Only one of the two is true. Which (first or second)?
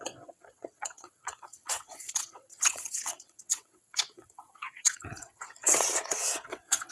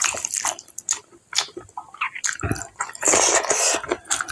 second